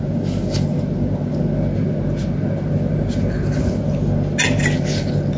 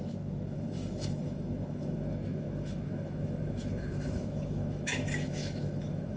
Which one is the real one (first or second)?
first